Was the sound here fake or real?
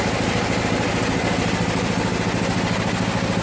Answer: real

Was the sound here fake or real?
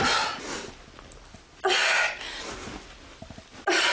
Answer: real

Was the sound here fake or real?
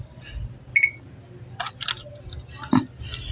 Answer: real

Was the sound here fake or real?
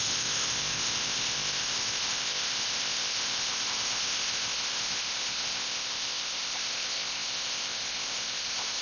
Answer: fake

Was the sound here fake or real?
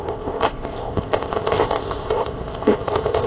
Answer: fake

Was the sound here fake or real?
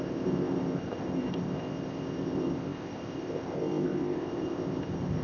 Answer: fake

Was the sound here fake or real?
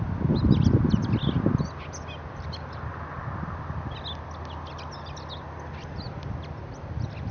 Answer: real